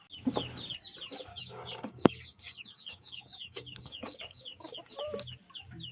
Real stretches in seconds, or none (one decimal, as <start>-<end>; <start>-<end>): 0.0-1.3; 4.8-5.9